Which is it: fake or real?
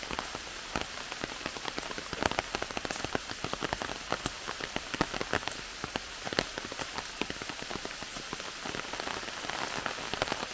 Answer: real